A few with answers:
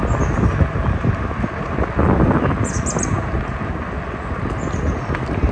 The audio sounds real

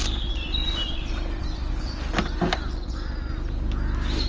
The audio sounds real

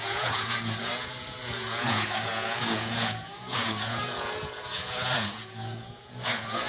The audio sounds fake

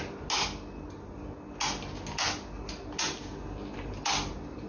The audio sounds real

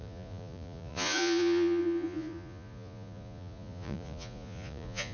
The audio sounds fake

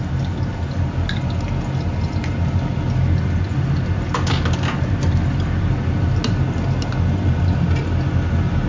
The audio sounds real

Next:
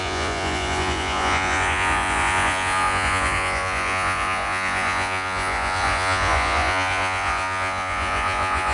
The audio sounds fake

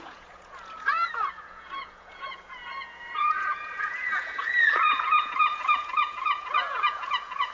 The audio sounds fake